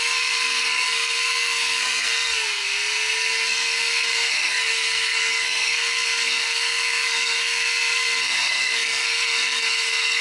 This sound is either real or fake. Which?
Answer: fake